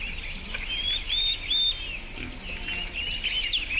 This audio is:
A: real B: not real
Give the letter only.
A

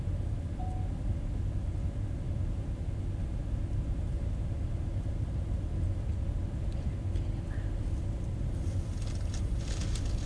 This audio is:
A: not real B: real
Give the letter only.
B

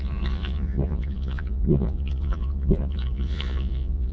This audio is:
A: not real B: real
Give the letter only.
A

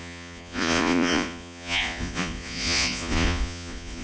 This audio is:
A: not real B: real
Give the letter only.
A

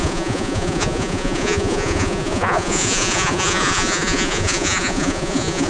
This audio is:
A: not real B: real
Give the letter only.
A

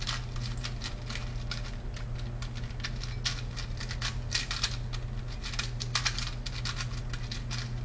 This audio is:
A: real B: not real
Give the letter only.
A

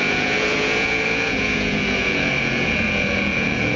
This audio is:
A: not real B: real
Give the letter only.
A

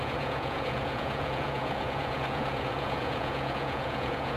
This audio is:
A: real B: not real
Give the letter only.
B